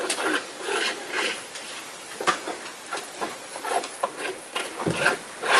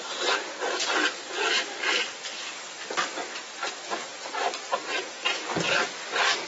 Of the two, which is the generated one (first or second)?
first